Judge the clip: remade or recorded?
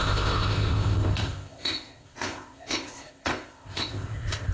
remade